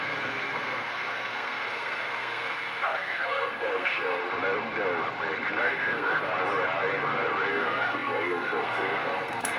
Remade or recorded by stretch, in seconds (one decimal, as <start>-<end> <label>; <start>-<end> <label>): 0.0-4.2 remade; 4.2-5.6 recorded; 5.6-6.3 remade; 6.3-7.5 recorded; 7.5-9.6 remade